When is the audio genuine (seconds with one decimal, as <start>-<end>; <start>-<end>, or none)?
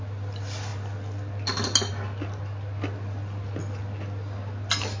0.0-5.0